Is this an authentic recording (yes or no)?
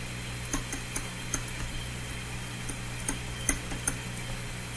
yes